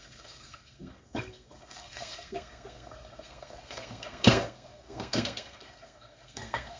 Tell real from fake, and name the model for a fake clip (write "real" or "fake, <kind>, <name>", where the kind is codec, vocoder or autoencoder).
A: fake, codec, SNAC